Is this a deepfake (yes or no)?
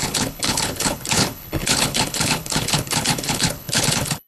yes